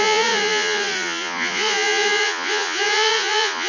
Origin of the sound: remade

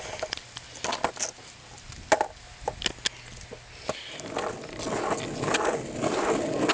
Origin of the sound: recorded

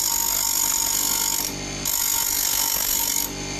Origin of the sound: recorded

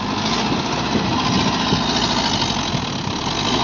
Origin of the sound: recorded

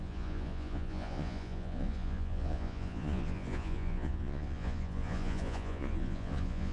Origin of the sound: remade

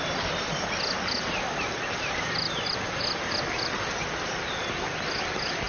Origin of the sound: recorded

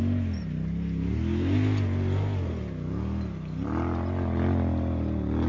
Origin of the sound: recorded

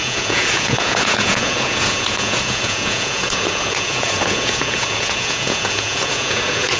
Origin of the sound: remade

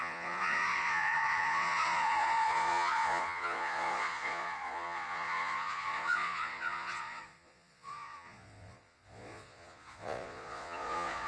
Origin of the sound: remade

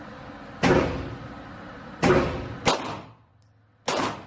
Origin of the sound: recorded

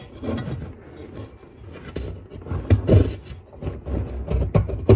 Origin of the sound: recorded